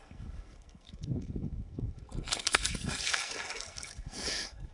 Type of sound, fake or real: fake